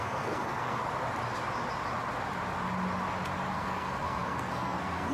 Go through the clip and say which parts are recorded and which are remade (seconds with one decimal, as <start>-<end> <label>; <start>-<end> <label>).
0.0-0.8 remade; 0.8-3.5 recorded; 3.5-5.1 remade